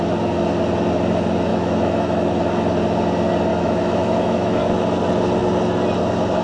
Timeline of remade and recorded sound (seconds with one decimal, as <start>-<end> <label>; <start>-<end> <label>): 0.0-1.5 recorded; 1.5-2.4 remade; 2.4-3.5 recorded; 3.5-4.6 remade; 4.6-6.4 recorded